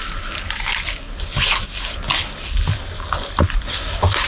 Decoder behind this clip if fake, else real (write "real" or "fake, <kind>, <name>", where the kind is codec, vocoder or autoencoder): real